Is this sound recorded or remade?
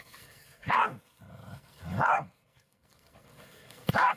remade